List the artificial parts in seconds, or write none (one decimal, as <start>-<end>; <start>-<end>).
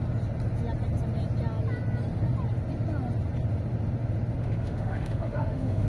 4.4-5.9